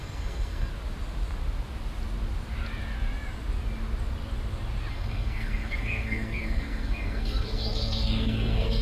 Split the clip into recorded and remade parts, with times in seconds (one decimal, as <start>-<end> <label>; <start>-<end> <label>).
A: 0.0-0.7 remade; 0.7-4.9 recorded; 4.9-8.8 remade